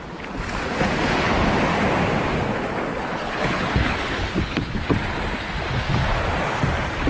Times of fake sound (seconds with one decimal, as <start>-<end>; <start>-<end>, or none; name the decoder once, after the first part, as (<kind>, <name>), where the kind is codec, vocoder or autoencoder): 2.9-4.7 (codec, HILCodec)